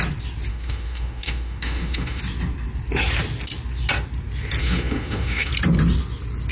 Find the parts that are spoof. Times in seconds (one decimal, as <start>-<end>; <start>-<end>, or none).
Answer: 0.5-2.2; 4.6-5.5